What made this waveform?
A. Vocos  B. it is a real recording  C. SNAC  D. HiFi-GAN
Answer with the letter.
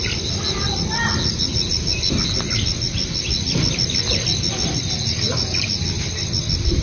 B